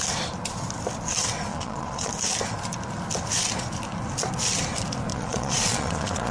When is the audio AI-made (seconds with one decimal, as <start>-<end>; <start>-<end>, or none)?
1.5-2.1; 5.1-6.3